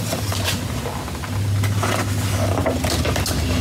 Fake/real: real